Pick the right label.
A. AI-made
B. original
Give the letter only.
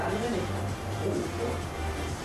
A